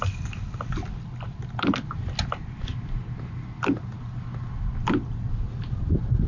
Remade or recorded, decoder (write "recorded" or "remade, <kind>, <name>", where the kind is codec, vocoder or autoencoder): recorded